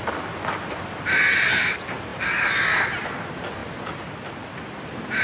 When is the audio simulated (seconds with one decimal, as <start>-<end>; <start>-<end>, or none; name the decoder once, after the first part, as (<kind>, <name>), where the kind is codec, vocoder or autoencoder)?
none